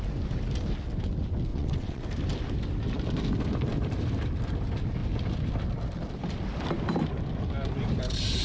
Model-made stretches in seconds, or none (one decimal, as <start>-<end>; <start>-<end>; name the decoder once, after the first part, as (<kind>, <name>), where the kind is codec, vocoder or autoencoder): 1.5-2.0 (vocoder, WaveNeXt)